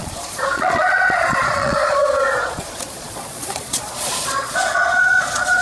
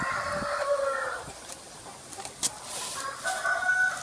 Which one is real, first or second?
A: second